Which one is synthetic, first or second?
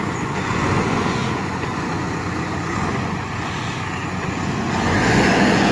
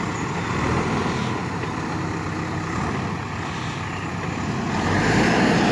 first